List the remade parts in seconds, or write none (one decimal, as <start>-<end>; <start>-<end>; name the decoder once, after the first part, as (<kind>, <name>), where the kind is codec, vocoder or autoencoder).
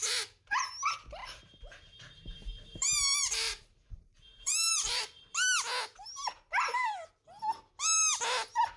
0.0-0.7 (vocoder, BigVGAN v2); 1.2-5.2